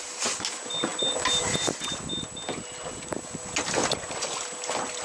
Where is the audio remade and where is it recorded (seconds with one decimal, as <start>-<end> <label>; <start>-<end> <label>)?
0.0-5.0 recorded